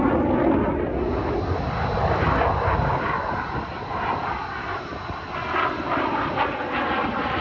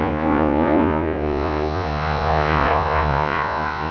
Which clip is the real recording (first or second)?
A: first